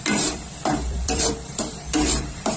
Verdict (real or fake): fake